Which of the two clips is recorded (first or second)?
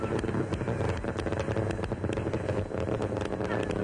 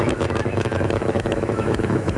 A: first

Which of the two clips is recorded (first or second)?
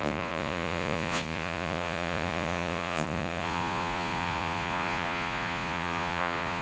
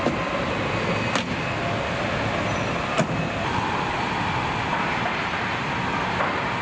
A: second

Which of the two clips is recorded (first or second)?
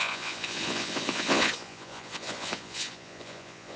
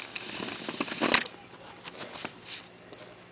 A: second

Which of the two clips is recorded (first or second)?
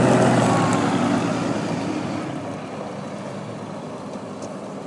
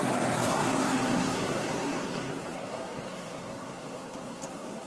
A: first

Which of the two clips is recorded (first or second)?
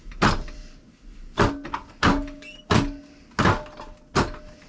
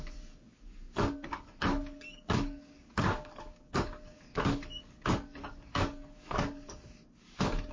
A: first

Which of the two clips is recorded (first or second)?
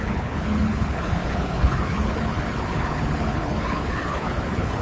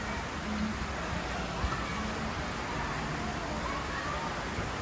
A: second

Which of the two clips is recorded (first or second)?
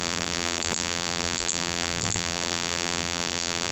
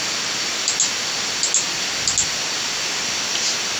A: second